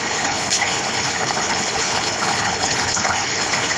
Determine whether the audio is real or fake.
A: fake